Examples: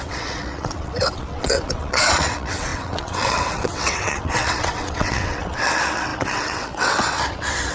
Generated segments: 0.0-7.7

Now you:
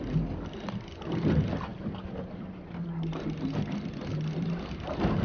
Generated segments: none

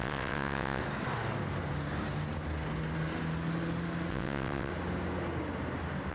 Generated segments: 0.0-0.8; 4.1-4.7